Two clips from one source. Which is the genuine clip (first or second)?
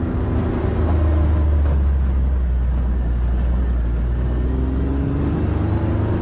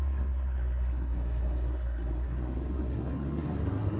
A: first